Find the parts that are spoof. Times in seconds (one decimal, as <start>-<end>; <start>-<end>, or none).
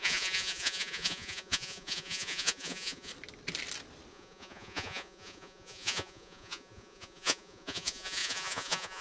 0.0-3.1; 4.1-9.0